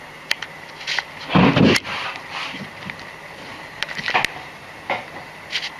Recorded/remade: recorded